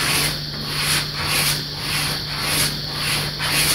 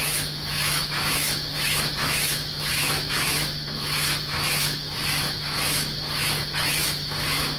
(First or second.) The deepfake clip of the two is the second